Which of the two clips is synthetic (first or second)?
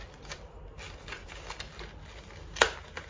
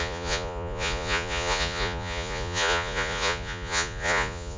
second